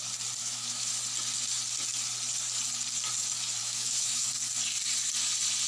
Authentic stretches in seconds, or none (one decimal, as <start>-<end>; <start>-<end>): 0.0-0.4; 0.9-3.6; 4.3-5.7